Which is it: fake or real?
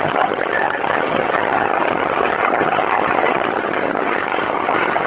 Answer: fake